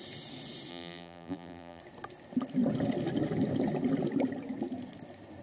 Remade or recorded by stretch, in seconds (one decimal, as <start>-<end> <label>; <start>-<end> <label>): 0.0-0.7 recorded; 0.7-1.8 remade; 1.8-5.4 recorded